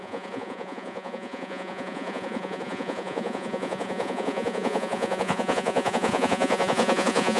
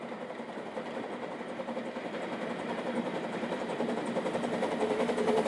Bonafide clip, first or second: second